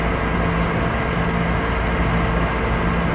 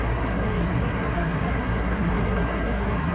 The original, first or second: first